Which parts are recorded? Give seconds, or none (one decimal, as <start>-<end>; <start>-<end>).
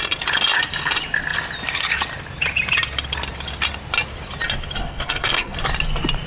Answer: 0.0-4.8; 5.6-6.3